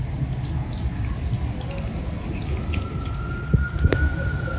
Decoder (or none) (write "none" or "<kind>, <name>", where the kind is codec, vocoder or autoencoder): none